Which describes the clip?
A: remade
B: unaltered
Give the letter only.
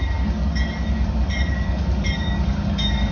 A